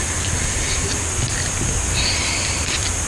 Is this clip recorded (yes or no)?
yes